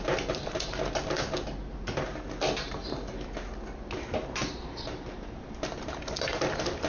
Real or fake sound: real